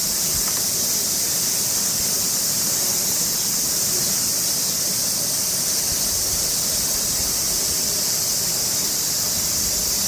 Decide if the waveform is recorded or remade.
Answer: recorded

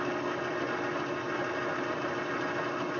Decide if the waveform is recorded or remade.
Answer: recorded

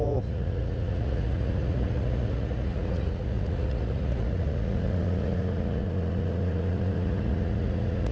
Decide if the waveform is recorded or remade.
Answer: remade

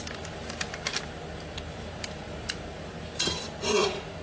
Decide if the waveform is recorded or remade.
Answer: remade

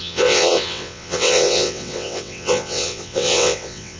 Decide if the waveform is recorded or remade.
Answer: remade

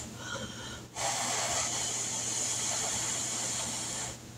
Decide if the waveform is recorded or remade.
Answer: remade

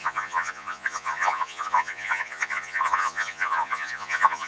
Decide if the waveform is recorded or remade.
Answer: remade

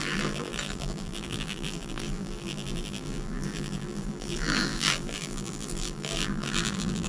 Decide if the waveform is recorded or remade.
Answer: remade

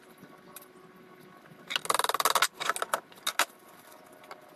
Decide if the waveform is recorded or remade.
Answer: recorded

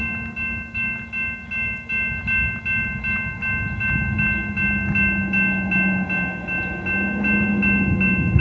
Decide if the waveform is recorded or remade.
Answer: recorded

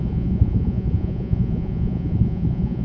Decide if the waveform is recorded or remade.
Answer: remade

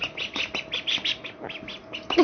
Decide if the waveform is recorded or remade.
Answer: recorded